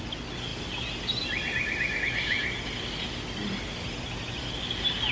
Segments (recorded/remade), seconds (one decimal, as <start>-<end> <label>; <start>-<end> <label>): 0.0-5.1 recorded